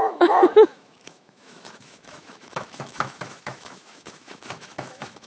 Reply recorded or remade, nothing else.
remade